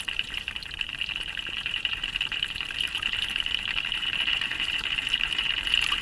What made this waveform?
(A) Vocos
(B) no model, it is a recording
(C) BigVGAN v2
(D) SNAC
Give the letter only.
C